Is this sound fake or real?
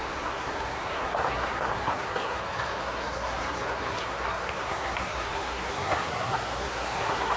fake